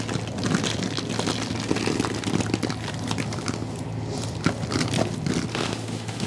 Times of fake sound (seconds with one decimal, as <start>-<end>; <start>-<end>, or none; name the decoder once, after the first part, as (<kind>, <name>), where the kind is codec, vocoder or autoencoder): 5.5-6.3 (autoencoder, DAC-VAE)